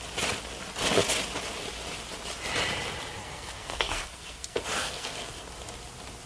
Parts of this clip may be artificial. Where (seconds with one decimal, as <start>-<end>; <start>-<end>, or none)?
3.2-5.5